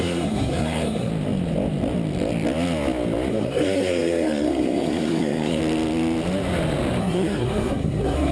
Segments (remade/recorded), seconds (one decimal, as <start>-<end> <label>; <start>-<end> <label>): 0.0-1.1 remade; 1.1-3.3 recorded; 3.3-5.6 remade; 5.6-7.0 recorded; 7.0-8.3 remade